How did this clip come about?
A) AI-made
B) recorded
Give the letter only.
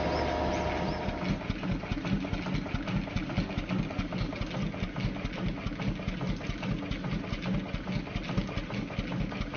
B